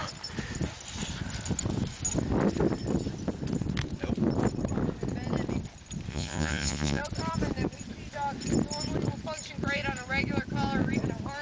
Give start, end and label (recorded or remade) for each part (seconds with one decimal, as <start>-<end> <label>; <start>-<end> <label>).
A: 0.0-6.1 recorded; 6.1-7.0 remade; 7.0-11.4 recorded